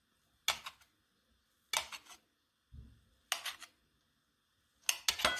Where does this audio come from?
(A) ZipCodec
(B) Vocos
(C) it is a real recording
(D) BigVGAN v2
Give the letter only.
C